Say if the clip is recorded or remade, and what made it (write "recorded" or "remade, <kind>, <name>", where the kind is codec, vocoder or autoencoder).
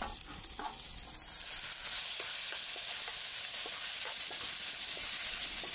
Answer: recorded